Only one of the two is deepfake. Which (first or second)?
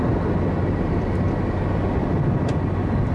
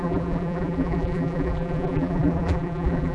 second